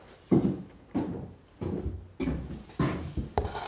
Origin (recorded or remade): remade